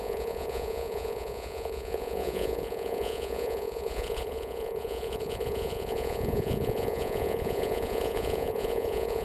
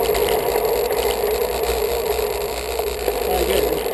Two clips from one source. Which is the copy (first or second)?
first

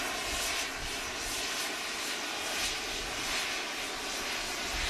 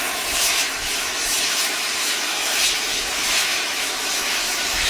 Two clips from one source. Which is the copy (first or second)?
second